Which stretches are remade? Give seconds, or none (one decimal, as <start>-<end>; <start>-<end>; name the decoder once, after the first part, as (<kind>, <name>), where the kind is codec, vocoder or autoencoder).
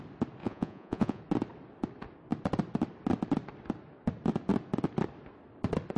0.4-1.2 (vocoder, Vocos)